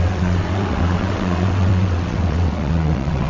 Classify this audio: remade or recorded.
remade